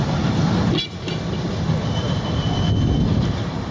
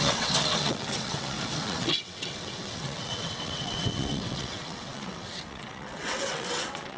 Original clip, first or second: first